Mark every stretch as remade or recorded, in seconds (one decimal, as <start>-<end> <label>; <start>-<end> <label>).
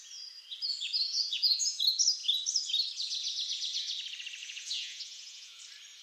0.0-1.1 recorded; 1.1-1.8 remade; 1.8-4.4 recorded; 4.4-5.6 remade; 5.6-6.0 recorded